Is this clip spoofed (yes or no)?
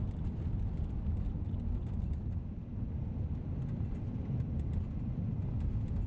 no